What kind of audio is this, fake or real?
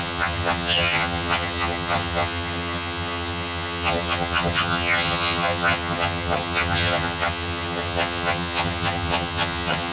fake